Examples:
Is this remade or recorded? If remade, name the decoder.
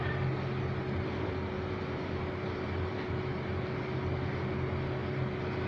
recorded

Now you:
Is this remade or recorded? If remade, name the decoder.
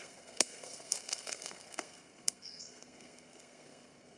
remade, codec, SNAC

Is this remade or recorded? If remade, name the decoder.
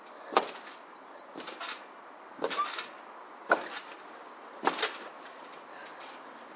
recorded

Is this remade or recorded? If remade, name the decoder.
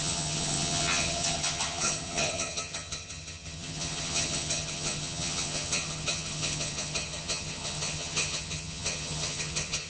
remade, vocoder, HiFi-GAN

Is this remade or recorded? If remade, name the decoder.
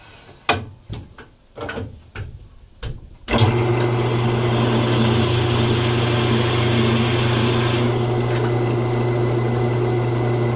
recorded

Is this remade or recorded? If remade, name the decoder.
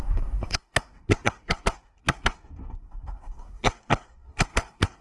remade, codec, SNAC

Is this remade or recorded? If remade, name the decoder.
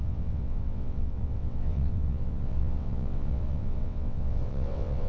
remade, vocoder, WaveNeXt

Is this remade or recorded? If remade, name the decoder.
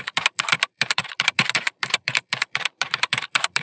remade, vocoder, BigVGAN v2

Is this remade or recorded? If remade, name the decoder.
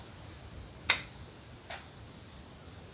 recorded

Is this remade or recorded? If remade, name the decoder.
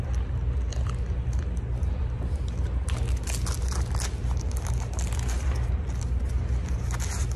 recorded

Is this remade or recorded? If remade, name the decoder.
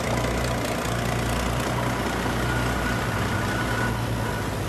recorded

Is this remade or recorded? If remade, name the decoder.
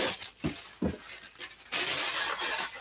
recorded